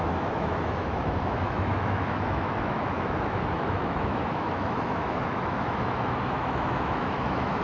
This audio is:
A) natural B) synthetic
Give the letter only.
B